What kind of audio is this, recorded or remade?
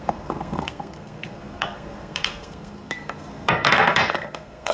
remade